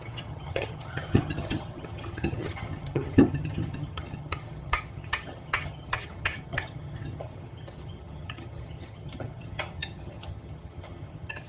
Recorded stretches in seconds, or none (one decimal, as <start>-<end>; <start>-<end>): none